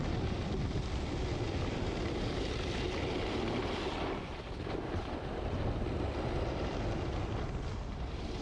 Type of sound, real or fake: real